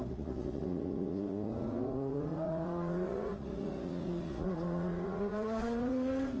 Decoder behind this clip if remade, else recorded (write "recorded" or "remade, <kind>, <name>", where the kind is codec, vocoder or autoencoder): remade, vocoder, Vocos